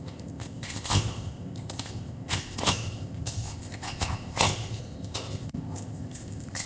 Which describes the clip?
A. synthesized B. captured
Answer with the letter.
A